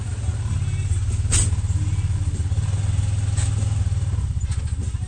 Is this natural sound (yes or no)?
yes